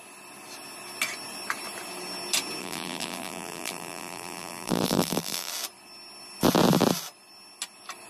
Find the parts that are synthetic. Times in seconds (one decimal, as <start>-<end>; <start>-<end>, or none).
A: 2.6-5.5